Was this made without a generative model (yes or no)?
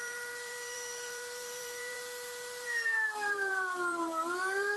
no